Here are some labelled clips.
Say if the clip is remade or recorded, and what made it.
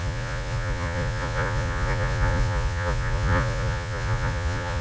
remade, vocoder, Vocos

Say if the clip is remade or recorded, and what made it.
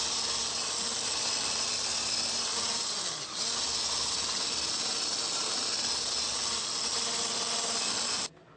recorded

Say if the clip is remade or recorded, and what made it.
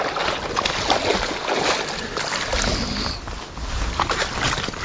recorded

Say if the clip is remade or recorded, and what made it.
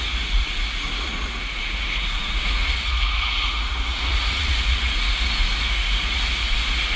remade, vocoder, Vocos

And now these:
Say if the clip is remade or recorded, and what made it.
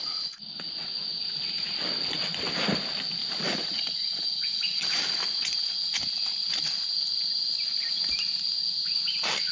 recorded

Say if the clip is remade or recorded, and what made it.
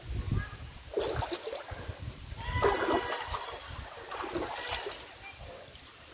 recorded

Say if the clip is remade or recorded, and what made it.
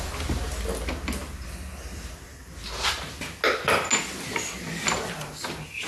recorded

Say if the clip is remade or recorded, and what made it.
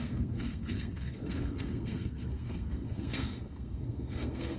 remade, codec, SNAC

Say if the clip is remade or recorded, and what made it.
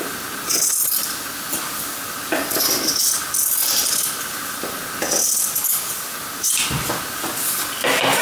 recorded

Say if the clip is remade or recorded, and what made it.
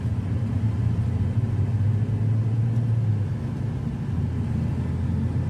recorded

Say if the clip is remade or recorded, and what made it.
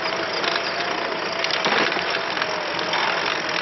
recorded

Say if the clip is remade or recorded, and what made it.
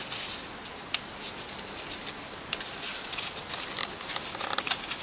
recorded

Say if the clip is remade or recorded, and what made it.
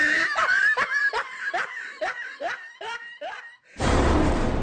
remade, vocoder, BigVGAN v2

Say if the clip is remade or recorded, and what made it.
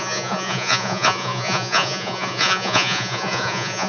remade, vocoder, Vocos